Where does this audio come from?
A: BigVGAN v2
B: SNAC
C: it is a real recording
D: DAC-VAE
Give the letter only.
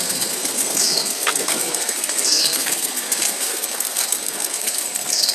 B